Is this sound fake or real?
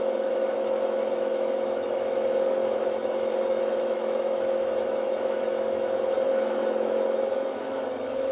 fake